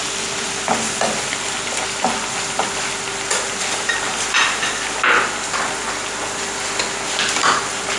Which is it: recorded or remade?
recorded